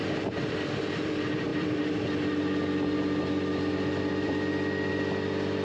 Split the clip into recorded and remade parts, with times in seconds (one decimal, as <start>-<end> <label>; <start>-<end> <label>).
0.0-5.6 remade